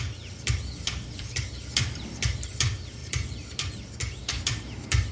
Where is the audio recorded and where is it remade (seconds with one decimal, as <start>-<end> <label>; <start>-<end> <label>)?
0.0-3.0 recorded; 3.0-3.8 remade; 3.8-5.1 recorded